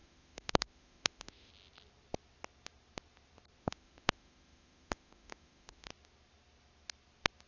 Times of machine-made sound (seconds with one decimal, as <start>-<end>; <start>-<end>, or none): 0.0-1.5; 3.6-5.9